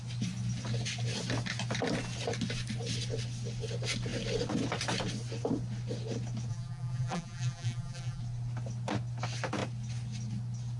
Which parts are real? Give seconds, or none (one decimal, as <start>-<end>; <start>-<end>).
0.0-6.5; 8.2-10.8

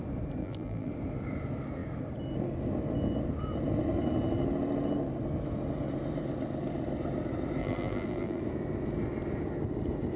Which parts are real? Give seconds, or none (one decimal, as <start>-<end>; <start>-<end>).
0.0-0.4; 0.9-7.6; 8.4-10.2

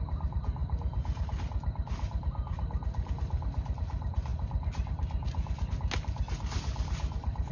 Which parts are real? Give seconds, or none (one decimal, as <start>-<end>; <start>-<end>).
0.0-7.5